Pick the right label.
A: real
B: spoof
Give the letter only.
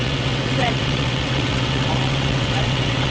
B